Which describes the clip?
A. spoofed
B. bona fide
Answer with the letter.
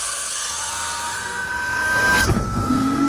A